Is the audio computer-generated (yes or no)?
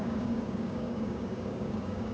yes